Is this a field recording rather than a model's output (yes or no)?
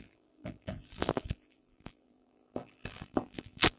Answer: no